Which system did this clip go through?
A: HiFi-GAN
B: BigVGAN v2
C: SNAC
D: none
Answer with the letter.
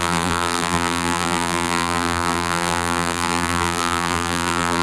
B